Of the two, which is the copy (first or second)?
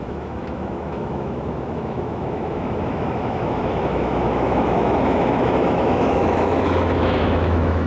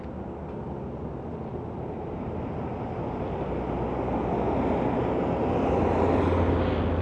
first